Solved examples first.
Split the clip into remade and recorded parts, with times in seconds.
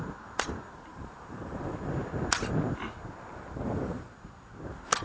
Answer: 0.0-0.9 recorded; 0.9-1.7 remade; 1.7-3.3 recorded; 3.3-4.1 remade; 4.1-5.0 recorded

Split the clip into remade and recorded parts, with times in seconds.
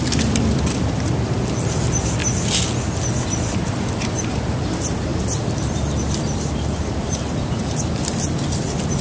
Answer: 0.0-2.2 remade; 2.2-3.2 recorded; 3.2-9.0 remade